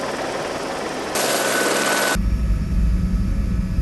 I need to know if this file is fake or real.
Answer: real